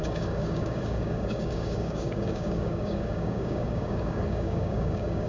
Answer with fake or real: fake